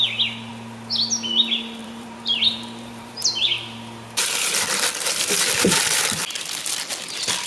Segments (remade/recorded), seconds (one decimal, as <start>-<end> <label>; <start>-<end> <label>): 0.0-1.8 recorded; 1.8-3.5 remade; 3.5-7.5 recorded